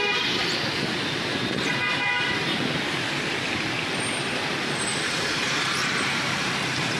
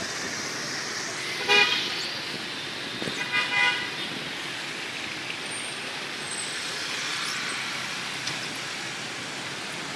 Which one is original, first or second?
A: second